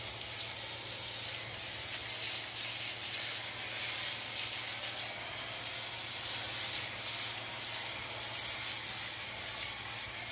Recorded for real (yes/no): yes